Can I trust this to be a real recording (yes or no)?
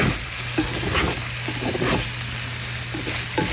yes